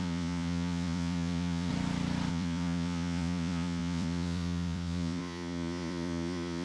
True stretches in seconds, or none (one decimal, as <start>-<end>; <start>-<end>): 1.7-2.3